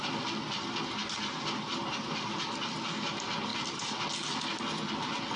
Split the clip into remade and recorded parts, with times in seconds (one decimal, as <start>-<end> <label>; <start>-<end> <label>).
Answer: 0.0-5.4 recorded